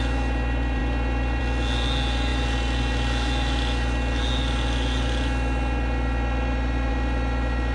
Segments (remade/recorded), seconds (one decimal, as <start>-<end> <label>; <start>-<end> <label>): 0.0-7.7 recorded

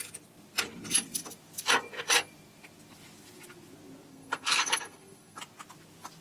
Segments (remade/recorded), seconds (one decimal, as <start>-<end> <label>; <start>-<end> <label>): 0.0-4.1 recorded; 4.1-5.4 remade; 5.4-6.2 recorded

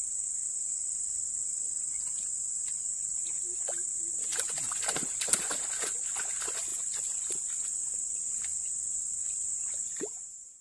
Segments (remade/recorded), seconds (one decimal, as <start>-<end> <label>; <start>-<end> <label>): 0.0-10.6 recorded

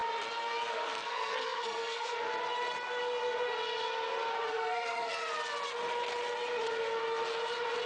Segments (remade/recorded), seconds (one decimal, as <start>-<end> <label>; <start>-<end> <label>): 0.0-0.7 recorded; 0.7-2.1 remade; 2.1-4.5 recorded; 4.5-5.2 remade; 5.2-7.9 recorded

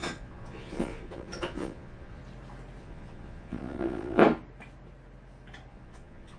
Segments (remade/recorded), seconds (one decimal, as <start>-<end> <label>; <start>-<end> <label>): 0.0-2.2 remade; 2.2-2.8 recorded; 2.8-4.2 remade; 4.2-5.7 recorded; 5.7-6.4 remade

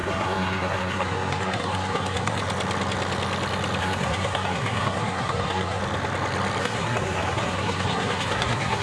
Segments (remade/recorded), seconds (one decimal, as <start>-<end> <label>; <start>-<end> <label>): 0.0-2.4 remade; 2.4-3.8 recorded; 3.8-5.8 remade; 5.8-6.6 recorded; 6.6-8.8 remade